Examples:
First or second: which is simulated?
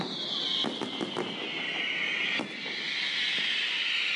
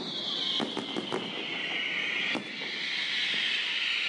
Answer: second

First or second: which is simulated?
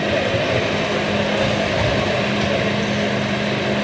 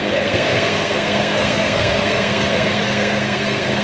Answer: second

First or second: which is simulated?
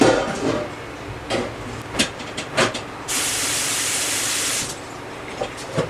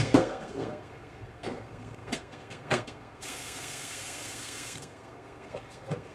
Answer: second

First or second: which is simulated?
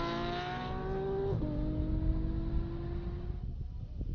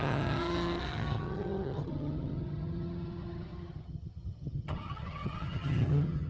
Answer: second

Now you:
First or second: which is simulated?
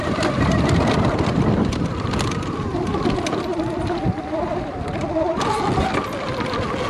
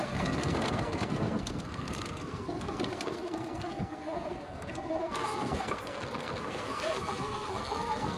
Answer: second